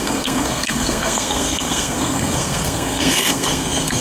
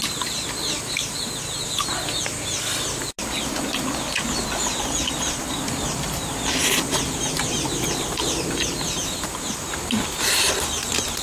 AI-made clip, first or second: first